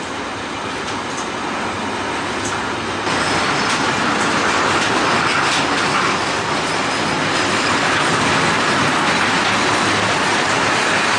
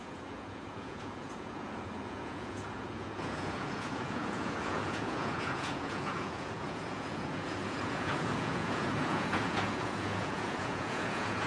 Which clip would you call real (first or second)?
first